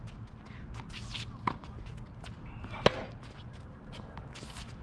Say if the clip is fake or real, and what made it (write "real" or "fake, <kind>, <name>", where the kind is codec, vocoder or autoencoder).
real